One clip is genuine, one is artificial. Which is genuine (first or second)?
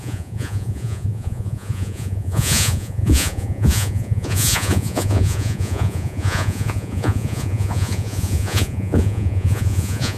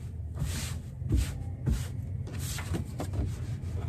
second